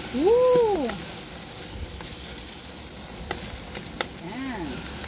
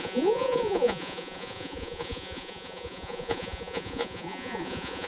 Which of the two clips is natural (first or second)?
first